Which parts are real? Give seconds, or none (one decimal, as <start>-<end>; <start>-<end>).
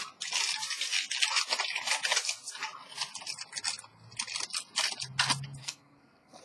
0.0-5.6